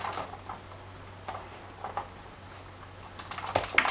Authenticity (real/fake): real